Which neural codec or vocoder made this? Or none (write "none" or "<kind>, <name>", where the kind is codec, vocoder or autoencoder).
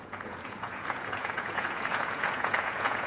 vocoder, Vocos